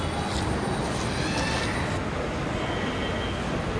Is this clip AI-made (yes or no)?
no